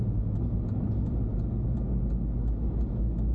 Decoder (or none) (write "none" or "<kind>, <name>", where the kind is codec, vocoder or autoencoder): none